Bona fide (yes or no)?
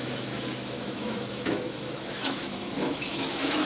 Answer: no